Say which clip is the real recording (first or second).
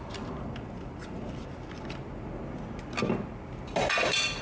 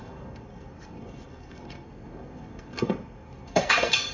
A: first